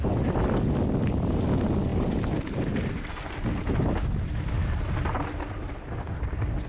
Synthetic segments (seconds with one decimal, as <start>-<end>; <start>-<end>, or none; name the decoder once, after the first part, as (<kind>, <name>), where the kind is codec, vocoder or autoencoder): none